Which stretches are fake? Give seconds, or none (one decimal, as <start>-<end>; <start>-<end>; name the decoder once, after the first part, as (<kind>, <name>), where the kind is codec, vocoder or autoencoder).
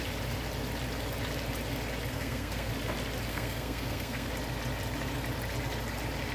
2.1-2.7 (codec, SNAC); 3.3-4.3